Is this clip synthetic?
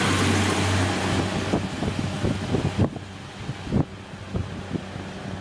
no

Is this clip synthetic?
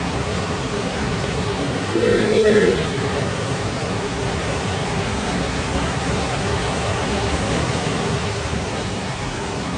yes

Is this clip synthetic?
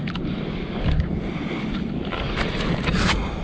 no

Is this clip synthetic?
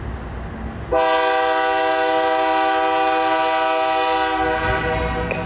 no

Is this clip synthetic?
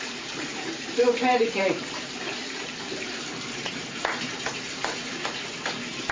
yes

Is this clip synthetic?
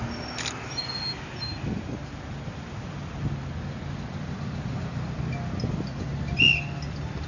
no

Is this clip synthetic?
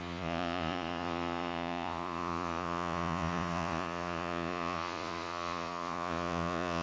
yes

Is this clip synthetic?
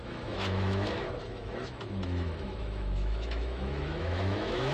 yes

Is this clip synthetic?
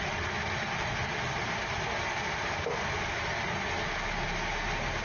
no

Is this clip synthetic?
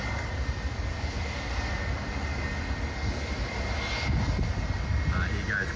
no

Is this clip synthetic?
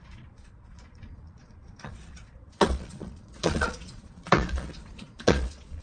yes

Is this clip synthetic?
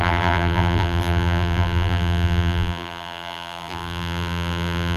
yes